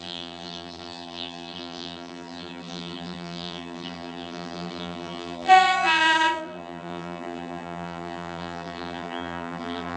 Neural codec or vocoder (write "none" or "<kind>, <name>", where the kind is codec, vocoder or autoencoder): vocoder, BigVGAN v2